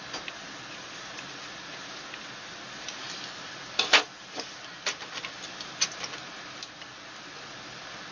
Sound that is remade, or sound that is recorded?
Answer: recorded